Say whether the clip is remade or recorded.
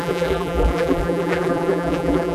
remade